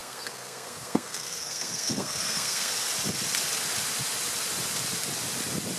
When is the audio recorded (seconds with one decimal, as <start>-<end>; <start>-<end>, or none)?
2.7-5.8